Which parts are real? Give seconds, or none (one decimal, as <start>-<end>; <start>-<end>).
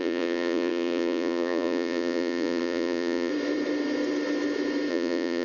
3.3-4.9